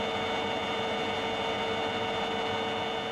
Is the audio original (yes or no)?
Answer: yes